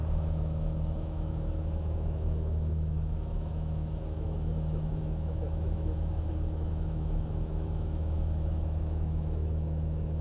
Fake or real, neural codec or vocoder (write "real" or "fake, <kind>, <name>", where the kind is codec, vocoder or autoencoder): fake, autoencoder, DAC-VAE